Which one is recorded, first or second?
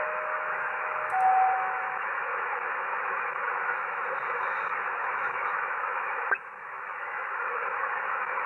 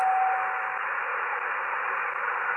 second